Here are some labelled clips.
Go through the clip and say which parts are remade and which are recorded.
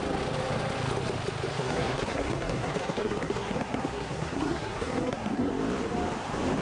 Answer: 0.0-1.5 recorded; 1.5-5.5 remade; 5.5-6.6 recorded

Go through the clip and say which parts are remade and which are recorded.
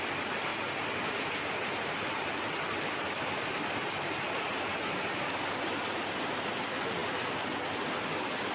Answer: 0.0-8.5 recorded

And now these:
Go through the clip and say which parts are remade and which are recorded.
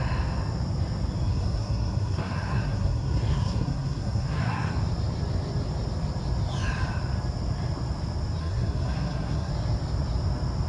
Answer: 0.0-1.3 recorded; 1.3-4.7 remade; 4.7-8.4 recorded; 8.4-9.5 remade; 9.5-10.7 recorded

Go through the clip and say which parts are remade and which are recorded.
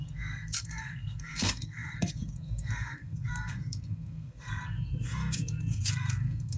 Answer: 0.0-6.6 remade